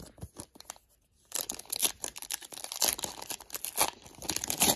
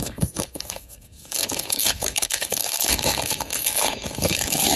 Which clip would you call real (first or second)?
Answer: first